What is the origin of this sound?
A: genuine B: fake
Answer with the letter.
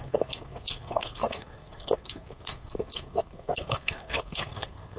B